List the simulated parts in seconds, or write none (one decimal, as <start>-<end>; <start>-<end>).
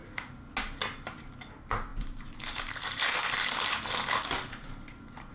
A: none